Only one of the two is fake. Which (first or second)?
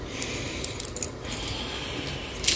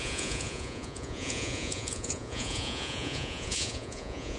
second